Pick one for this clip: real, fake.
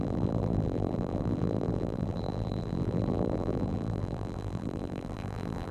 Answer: fake